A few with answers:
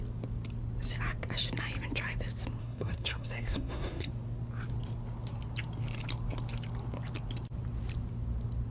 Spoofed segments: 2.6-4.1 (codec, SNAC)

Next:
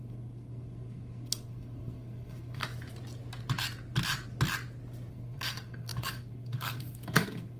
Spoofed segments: 0.0-2.6 (codec, SNAC); 5.1-7.6

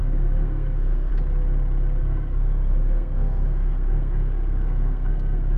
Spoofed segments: 0.0-1.1 (codec, SNAC); 2.0-5.6